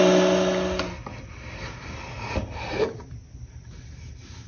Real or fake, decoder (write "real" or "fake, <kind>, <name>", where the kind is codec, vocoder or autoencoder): real